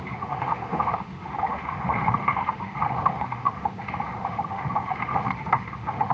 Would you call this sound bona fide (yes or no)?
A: no